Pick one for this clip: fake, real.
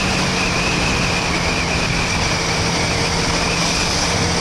real